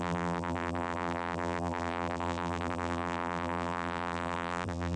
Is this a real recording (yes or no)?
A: no